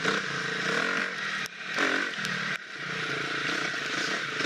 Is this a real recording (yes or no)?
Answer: yes